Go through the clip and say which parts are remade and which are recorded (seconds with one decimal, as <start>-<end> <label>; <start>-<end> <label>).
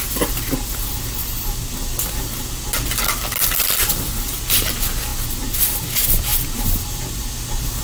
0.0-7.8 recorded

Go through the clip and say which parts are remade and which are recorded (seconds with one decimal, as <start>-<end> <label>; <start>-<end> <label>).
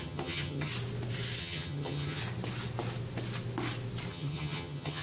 0.0-0.7 remade; 0.7-1.4 recorded; 1.4-2.2 remade; 2.2-4.1 recorded; 4.1-5.0 remade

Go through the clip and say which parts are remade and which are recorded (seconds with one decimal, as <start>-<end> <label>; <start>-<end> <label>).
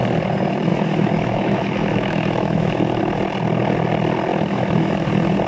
0.0-0.7 recorded; 0.7-3.0 remade; 3.0-4.3 recorded; 4.3-5.1 remade; 5.1-5.5 recorded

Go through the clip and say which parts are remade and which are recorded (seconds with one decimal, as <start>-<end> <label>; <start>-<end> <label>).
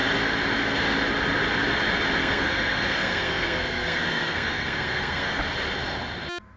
0.0-2.2 recorded; 2.2-5.4 remade; 5.4-6.6 recorded